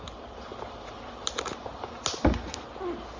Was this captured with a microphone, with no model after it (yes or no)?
yes